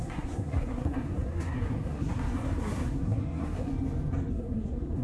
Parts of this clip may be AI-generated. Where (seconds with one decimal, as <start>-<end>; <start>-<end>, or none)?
0.0-3.7; 4.3-5.0